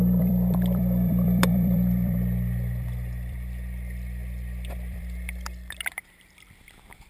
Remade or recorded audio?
remade